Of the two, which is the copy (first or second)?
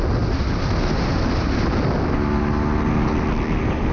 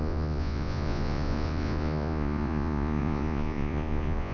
second